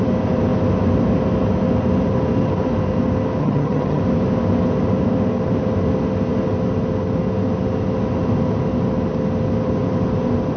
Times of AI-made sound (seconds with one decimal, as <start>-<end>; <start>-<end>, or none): 3.4-4.0